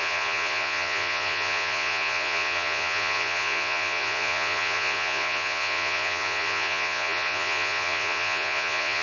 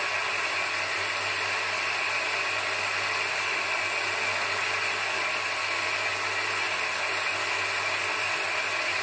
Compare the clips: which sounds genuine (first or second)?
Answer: second